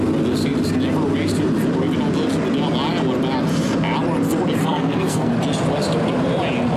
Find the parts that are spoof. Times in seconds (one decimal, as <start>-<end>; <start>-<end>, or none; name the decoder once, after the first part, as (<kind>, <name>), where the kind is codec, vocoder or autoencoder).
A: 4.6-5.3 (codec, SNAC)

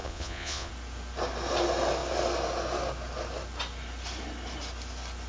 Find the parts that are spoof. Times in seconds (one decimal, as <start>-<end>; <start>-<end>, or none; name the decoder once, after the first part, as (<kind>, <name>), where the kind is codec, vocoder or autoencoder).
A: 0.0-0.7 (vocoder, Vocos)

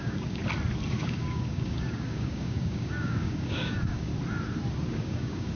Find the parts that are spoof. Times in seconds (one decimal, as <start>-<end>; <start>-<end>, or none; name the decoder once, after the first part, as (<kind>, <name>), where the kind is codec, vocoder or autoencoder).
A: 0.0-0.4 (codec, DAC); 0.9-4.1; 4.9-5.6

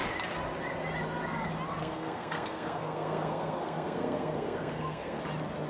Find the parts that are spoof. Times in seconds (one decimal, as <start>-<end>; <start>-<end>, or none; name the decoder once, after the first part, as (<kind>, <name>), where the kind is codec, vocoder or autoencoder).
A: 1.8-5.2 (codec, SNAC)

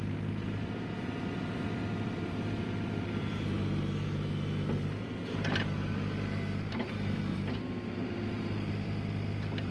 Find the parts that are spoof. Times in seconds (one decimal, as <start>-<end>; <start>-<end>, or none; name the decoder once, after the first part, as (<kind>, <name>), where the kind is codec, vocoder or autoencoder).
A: 0.0-9.7 (vocoder, BigVGAN v2)

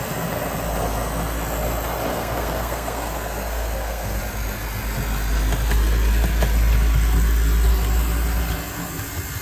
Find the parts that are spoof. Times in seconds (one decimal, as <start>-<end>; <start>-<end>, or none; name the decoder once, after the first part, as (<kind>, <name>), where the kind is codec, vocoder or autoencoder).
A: 2.1-4.2 (codec, SNAC)

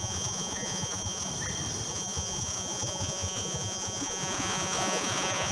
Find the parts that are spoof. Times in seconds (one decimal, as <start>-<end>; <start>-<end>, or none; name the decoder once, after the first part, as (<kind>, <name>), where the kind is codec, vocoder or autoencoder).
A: 0.0-1.3 (vocoder, Vocos); 1.9-5.5

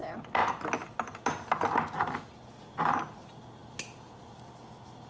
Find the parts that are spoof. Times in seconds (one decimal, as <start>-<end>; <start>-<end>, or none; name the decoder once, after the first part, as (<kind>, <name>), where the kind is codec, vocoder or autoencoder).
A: none